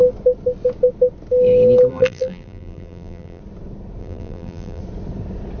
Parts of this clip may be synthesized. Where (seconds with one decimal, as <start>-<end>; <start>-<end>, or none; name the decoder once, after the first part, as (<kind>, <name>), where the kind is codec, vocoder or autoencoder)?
1.9-3.4 (vocoder, BigVGAN v2); 4.0-4.8